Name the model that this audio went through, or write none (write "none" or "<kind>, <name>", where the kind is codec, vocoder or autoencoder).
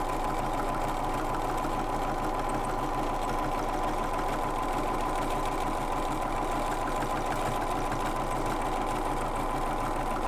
none